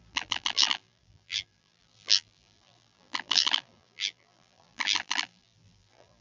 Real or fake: fake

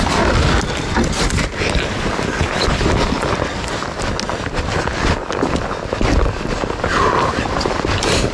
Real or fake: real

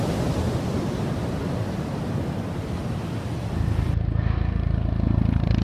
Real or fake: fake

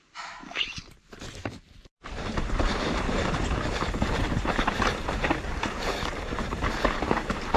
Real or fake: fake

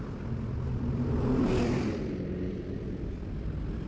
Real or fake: fake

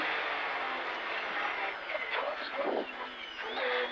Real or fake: real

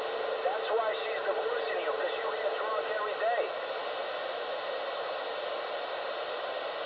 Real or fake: real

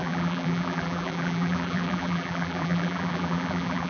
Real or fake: fake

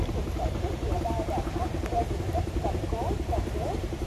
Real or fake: fake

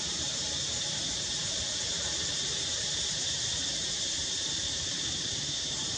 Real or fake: fake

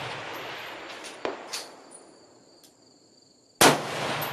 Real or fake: real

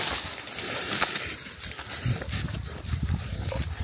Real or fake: fake